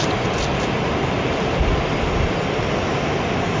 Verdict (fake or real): real